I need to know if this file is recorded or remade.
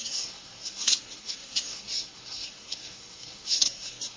remade